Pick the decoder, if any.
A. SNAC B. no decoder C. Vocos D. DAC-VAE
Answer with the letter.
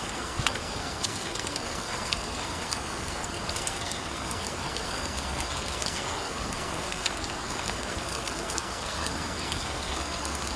A